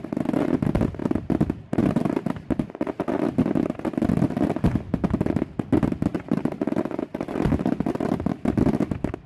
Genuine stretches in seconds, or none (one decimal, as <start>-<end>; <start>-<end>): 0.0-1.0; 1.8-9.3